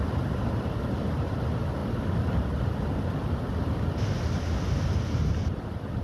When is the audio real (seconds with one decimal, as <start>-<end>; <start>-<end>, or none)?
0.0-6.0